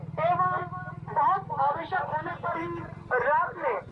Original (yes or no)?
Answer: yes